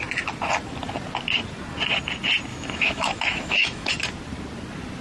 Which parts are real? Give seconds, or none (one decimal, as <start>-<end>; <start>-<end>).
0.0-2.5; 3.9-5.0